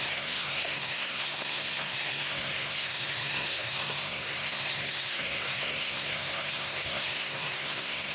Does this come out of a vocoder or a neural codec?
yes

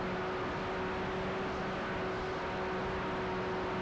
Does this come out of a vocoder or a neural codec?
no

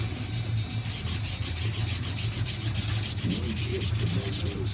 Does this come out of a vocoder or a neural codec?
no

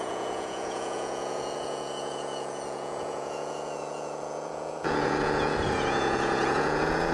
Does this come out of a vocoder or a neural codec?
yes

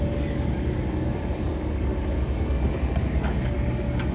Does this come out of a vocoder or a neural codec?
yes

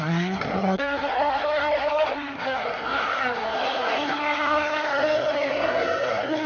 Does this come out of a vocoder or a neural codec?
yes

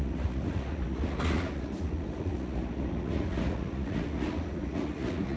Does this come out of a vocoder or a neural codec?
yes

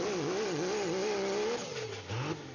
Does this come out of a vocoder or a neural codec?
no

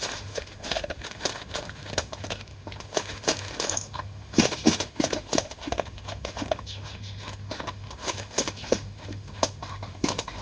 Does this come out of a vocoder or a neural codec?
yes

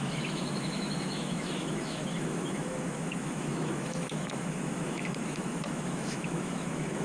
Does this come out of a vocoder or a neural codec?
yes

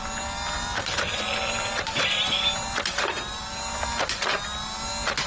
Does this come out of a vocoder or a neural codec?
no